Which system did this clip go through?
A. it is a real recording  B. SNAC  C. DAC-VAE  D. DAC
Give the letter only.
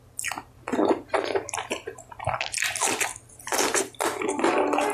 A